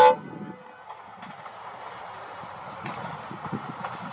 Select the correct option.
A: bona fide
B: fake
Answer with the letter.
A